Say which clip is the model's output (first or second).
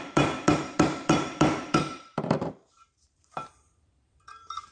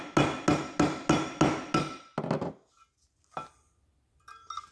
first